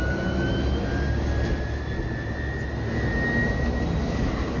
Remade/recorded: recorded